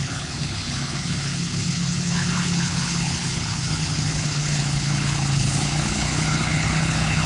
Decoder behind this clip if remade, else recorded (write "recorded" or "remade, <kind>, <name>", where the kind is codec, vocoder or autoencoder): remade, codec, HILCodec